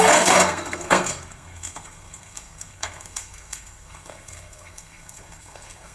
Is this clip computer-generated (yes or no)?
yes